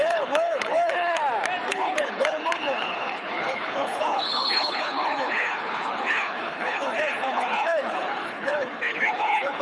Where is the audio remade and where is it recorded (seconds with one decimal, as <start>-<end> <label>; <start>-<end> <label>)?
0.0-1.2 remade; 1.2-1.7 recorded; 1.7-9.6 remade